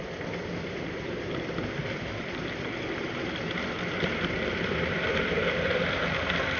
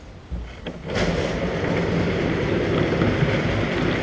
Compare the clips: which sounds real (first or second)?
second